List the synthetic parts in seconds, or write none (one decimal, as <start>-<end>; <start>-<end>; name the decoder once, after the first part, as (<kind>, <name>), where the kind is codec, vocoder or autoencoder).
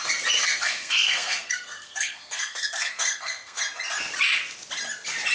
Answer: 0.4-3.6 (codec, SNAC)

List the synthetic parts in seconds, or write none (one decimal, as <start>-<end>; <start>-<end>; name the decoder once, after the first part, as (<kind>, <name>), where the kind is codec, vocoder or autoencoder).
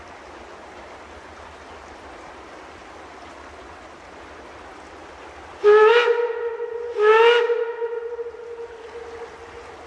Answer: none